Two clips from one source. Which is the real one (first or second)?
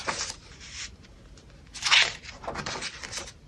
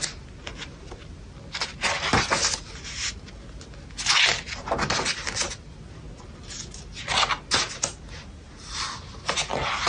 second